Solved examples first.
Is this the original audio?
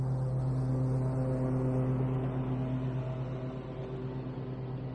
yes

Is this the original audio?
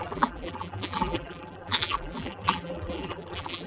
no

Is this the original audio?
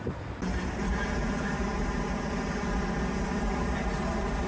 yes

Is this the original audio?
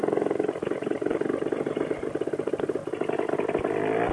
yes